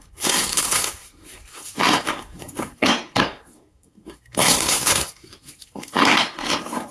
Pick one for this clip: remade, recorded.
remade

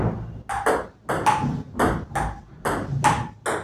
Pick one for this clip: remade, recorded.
recorded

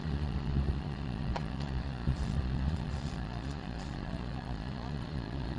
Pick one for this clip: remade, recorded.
remade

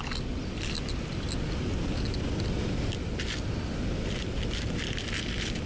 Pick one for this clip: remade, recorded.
recorded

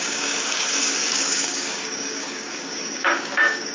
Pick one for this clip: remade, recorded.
remade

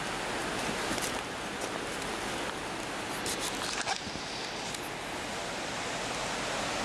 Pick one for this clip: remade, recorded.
recorded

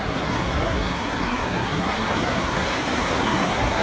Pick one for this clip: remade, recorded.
remade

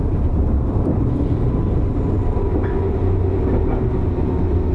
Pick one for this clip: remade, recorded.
recorded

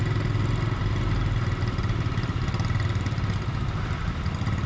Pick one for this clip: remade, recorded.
recorded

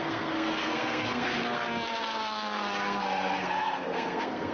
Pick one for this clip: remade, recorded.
remade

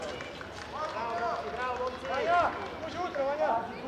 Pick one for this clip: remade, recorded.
recorded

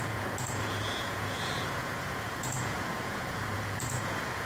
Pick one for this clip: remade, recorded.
remade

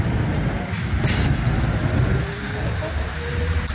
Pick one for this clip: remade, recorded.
recorded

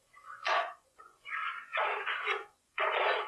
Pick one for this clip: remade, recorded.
remade